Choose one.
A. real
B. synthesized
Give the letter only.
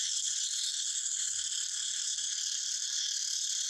B